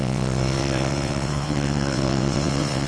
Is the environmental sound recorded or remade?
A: remade